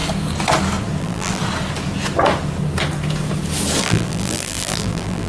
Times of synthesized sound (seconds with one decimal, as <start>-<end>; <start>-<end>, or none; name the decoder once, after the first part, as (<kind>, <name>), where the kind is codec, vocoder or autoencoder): 1.0-1.4 (vocoder, BigVGAN v2); 3.8-5.3